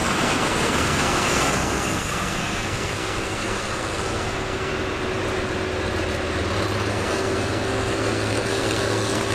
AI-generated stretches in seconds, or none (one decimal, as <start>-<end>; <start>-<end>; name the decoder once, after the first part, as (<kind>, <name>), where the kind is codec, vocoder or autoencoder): 0.0-4.7 (codec, SNAC); 6.9-9.3